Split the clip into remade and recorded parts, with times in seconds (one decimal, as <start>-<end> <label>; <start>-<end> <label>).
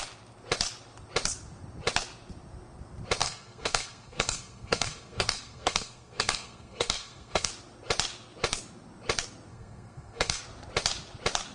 0.0-3.2 recorded; 3.2-7.5 remade; 7.5-9.5 recorded; 9.5-10.4 remade; 10.4-11.5 recorded